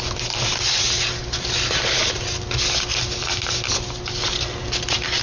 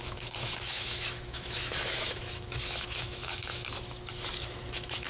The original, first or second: first